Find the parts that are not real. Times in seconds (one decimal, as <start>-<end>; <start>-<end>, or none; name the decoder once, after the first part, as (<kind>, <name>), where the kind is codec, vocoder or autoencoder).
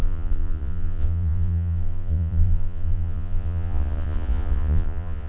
0.0-5.3 (vocoder, Vocos)